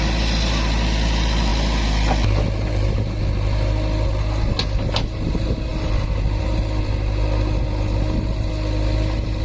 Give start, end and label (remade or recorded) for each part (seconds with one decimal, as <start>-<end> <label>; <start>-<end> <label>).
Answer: 0.0-9.4 recorded